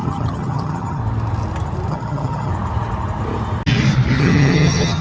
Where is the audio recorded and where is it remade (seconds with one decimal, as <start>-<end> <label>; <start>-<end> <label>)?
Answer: 0.0-1.0 remade; 1.0-1.9 recorded; 1.9-2.5 remade; 2.5-4.2 recorded; 4.2-5.0 remade